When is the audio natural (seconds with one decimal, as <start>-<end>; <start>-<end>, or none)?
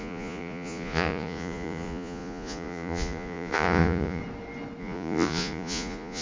4.2-4.8